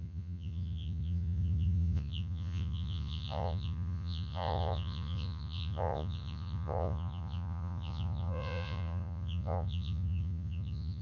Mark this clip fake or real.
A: fake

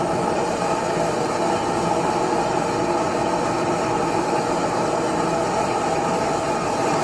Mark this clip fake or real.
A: real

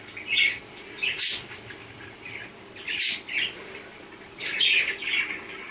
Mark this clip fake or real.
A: real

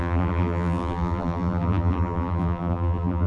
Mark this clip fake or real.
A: fake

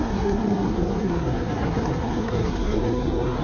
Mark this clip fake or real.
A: fake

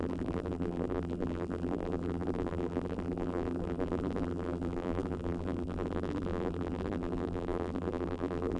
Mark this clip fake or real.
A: fake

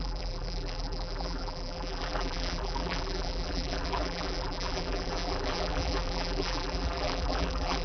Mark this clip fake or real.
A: fake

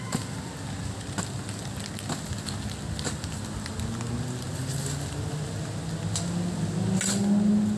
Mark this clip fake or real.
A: real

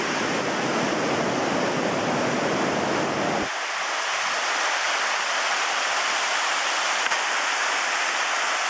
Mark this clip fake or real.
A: real